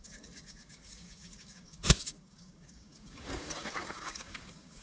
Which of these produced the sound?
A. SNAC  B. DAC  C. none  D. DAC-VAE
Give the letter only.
B